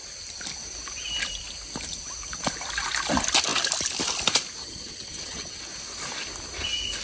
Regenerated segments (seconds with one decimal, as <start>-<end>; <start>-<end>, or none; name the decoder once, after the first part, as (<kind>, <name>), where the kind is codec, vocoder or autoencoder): 4.6-5.6 (vocoder, HiFi-GAN)